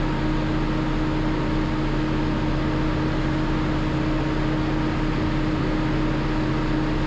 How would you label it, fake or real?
real